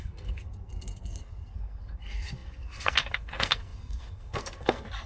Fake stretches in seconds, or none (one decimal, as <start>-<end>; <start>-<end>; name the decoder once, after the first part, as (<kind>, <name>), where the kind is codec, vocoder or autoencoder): 0.0-5.1 (codec, SNAC)